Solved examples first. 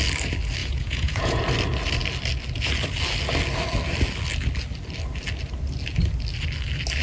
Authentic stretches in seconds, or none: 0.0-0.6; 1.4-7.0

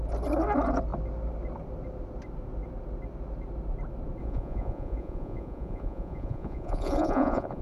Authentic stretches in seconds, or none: 0.0-4.2

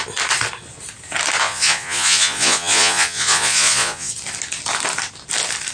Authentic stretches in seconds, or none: 0.0-1.4; 4.1-5.7